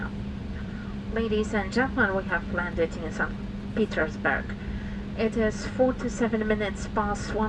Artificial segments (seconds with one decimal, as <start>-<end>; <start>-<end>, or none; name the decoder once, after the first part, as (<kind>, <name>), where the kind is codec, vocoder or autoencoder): 0.4-1.0 (vocoder, BigVGAN v2)